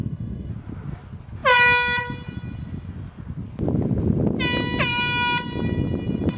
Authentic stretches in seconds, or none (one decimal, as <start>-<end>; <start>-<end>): 0.5-6.4